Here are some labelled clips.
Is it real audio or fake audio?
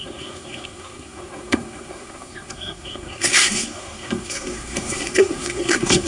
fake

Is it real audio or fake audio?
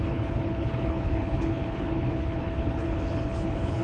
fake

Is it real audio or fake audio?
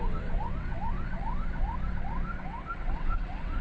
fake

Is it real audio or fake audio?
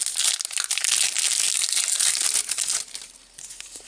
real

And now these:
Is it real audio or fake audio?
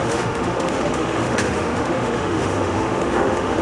fake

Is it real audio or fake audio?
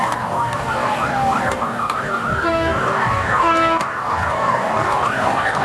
fake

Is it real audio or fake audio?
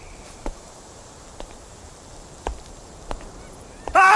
fake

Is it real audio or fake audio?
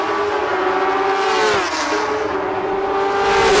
real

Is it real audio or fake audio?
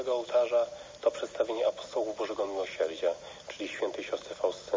real